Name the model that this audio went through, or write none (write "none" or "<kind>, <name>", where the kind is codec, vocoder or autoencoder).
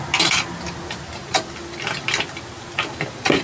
none